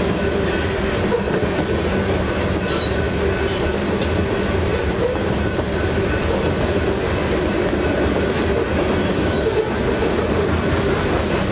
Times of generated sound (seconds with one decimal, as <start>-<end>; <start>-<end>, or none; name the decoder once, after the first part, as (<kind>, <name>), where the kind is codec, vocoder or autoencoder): 4.7-5.9 (vocoder, BigVGAN v2)